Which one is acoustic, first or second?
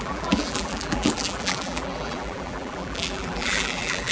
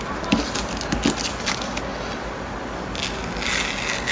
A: second